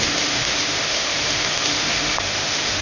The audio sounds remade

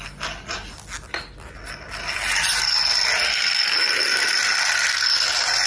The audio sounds recorded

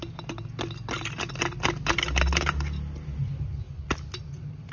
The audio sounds recorded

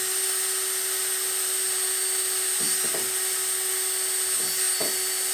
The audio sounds recorded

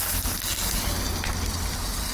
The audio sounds recorded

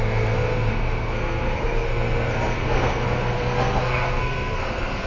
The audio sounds remade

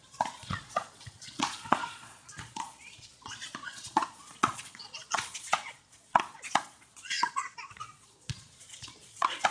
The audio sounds remade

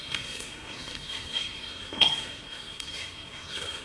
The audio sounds remade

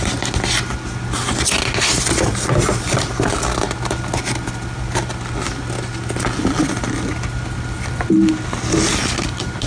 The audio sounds recorded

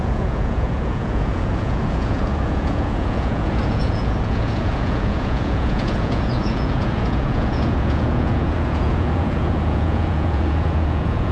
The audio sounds remade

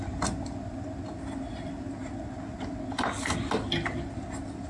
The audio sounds recorded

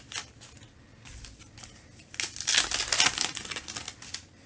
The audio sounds recorded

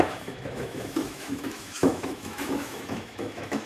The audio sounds remade